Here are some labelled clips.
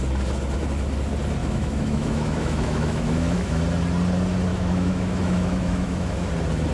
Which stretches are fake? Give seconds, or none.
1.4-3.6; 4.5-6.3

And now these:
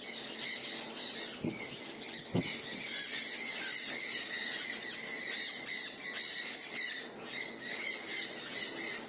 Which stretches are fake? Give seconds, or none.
none

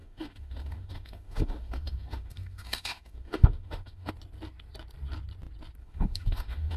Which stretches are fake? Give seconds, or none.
0.0-4.1; 5.8-6.8

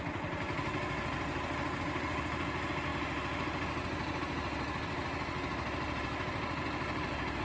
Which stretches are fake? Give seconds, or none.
none

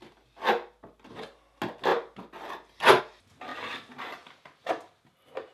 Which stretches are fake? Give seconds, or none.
none

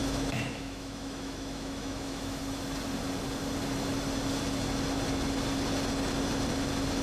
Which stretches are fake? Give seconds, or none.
0.0-2.4

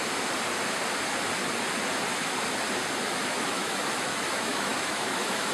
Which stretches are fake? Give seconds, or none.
3.3-5.5

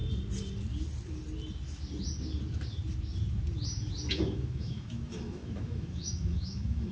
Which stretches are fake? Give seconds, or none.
4.1-6.9